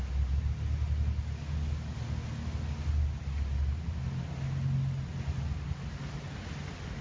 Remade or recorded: recorded